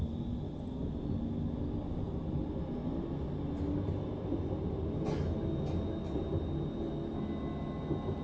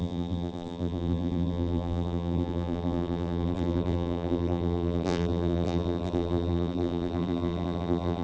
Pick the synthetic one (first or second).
second